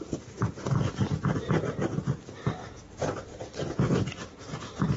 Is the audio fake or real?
real